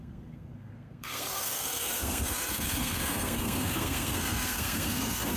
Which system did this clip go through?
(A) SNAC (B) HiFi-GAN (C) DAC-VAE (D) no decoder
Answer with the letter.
A